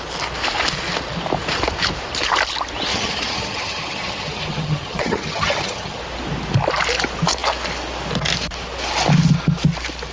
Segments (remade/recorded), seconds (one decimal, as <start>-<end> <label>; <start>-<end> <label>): 0.0-2.9 recorded; 2.9-6.0 remade; 6.0-10.1 recorded